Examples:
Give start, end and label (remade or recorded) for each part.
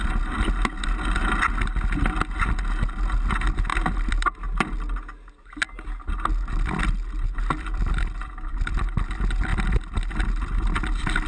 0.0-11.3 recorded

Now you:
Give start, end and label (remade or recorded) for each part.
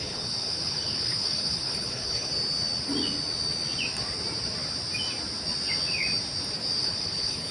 0.0-2.3 remade; 2.3-6.8 recorded; 6.8-7.5 remade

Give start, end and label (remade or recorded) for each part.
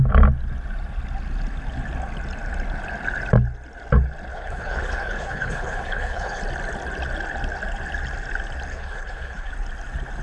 0.0-4.3 recorded; 4.3-6.4 remade; 6.4-8.7 recorded; 8.7-9.5 remade; 9.5-10.2 recorded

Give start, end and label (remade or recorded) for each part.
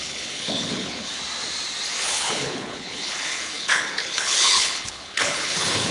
0.0-1.1 remade; 1.1-2.0 recorded; 2.0-5.9 remade